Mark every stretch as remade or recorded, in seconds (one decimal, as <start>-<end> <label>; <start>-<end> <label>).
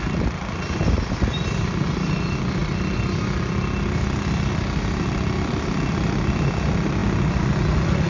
0.0-8.1 recorded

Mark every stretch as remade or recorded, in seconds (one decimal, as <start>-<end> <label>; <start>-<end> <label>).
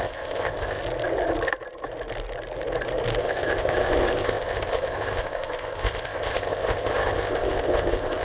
0.0-0.8 remade; 0.8-3.2 recorded; 3.2-8.2 remade